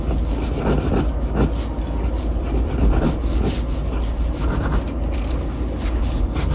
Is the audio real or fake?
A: real